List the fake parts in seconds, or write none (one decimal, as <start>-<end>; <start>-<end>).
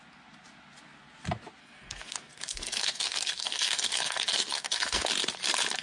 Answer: 1.6-5.1